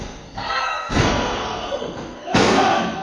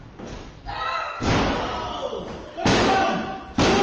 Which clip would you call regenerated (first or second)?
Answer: first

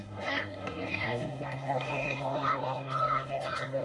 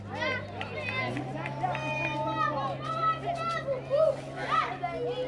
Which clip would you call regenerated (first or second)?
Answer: first